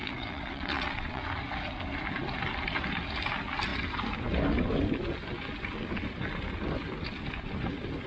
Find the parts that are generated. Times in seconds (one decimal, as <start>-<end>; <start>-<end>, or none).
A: 0.0-1.2